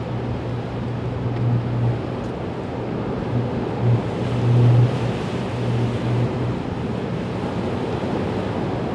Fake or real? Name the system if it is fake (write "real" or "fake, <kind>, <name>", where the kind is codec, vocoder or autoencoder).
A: real